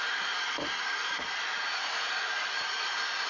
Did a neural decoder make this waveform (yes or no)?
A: yes